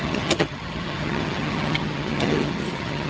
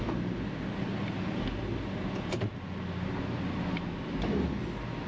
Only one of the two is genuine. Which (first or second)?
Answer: second